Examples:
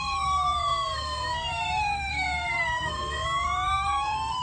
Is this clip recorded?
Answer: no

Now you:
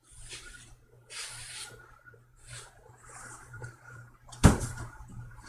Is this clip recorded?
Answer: no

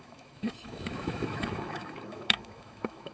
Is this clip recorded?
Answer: no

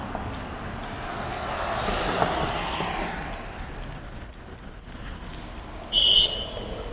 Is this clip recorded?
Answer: yes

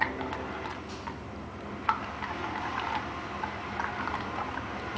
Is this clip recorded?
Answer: yes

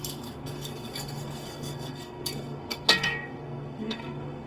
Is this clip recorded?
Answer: no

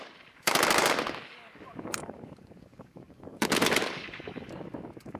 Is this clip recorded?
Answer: no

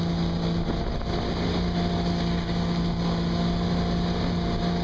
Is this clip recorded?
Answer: yes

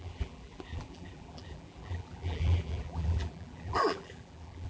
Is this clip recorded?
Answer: no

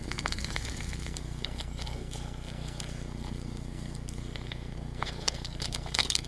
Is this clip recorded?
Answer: no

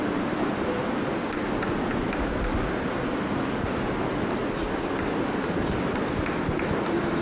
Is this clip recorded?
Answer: yes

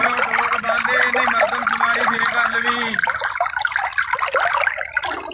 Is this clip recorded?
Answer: yes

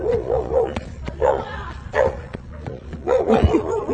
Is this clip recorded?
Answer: no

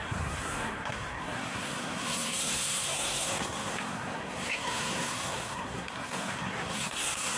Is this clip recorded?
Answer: no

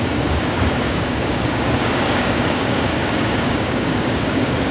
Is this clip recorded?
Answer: no